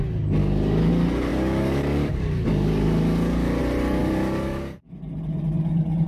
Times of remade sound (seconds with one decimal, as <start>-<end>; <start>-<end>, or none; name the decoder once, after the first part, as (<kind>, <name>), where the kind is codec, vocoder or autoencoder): 0.4-0.9 (codec, DAC); 1.3-3.6; 4.0-4.9